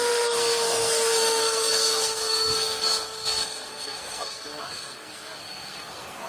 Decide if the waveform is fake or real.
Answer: fake